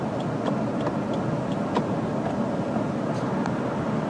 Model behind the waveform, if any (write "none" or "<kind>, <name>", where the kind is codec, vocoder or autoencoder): none